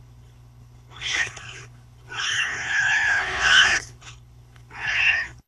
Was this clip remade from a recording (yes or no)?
yes